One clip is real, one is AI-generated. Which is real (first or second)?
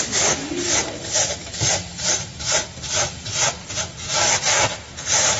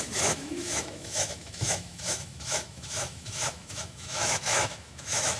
first